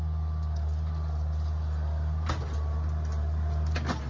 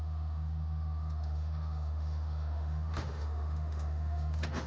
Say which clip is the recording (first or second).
first